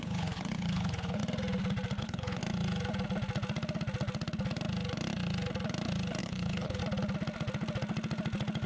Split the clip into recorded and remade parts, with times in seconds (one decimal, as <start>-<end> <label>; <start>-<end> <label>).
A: 0.0-1.2 remade; 1.2-2.0 recorded; 2.0-2.4 remade; 2.4-6.2 recorded; 6.2-6.8 remade; 6.8-8.7 recorded